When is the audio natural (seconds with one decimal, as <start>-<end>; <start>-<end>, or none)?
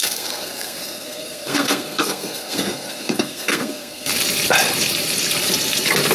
4.1-6.1